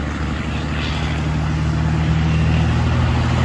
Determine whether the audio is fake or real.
real